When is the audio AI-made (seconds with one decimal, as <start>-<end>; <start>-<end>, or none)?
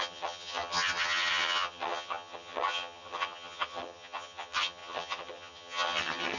0.0-6.4